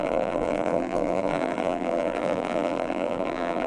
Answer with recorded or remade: remade